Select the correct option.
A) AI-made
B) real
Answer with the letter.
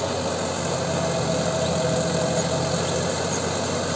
B